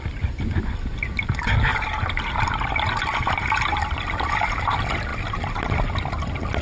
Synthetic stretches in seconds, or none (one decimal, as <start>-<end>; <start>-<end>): 5.1-5.7